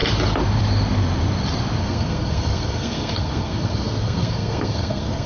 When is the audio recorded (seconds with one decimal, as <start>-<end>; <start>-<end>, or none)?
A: 0.0-1.8